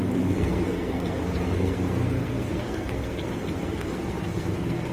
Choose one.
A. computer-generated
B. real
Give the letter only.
A